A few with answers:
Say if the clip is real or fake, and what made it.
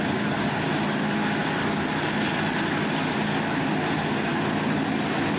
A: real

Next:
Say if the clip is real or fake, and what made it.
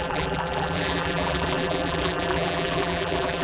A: fake, vocoder, BigVGAN v2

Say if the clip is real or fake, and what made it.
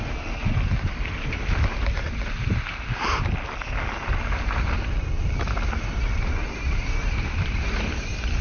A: real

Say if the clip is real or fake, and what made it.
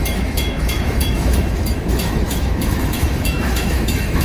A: fake, autoencoder, DAC-VAE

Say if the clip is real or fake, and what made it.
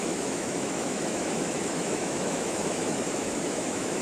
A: fake, autoencoder, DAC-VAE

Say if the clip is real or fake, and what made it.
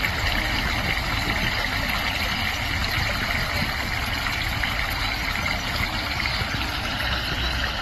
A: real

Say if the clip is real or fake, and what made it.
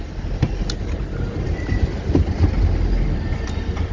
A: real